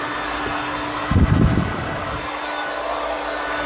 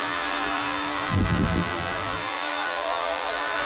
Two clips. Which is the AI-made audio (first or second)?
second